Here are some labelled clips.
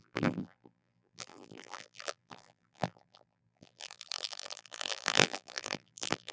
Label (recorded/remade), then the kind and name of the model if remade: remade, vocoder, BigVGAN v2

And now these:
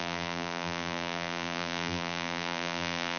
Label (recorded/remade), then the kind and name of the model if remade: remade, vocoder, BigVGAN v2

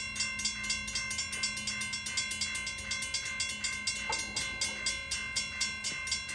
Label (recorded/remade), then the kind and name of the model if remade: recorded